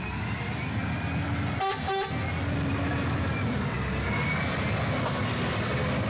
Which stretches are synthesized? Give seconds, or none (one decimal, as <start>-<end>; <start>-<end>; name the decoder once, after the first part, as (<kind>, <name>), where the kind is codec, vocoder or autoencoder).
0.0-0.8 (vocoder, BigVGAN v2); 2.7-6.1